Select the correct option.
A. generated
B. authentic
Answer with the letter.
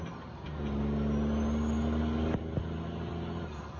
B